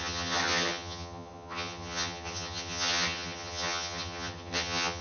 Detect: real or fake fake